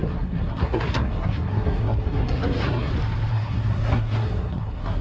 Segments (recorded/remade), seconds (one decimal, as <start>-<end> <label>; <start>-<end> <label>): 0.0-2.9 remade; 2.9-3.3 recorded; 3.3-5.0 remade